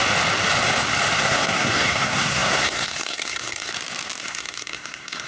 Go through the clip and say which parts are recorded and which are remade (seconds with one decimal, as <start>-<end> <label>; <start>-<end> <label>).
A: 0.0-1.2 recorded; 1.2-3.7 remade; 3.7-4.2 recorded; 4.2-5.3 remade